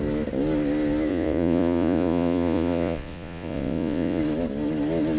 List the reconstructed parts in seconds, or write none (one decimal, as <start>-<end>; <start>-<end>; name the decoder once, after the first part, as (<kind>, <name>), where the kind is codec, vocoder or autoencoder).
1.1-4.2 (vocoder, Vocos)